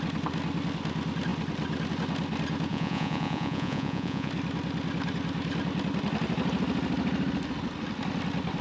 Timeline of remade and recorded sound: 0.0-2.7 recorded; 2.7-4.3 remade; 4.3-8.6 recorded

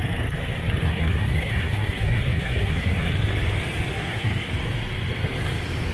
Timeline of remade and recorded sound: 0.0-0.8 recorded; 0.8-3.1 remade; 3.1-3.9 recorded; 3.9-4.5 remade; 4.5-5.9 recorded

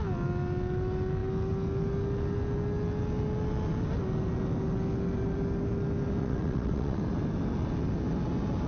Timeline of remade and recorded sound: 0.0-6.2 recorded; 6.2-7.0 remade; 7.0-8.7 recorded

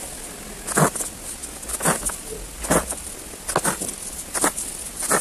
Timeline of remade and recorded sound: 0.0-5.2 recorded

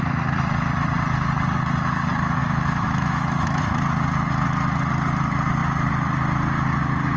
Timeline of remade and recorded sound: 0.0-2.4 recorded; 2.4-3.6 remade; 3.6-7.2 recorded

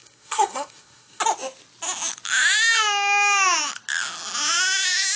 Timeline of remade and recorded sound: 0.0-1.2 remade; 1.2-5.2 recorded